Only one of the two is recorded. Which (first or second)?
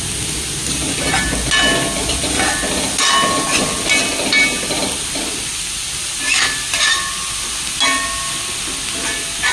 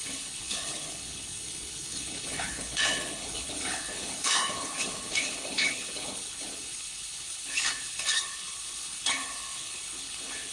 first